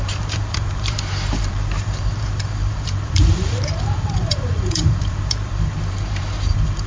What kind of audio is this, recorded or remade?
remade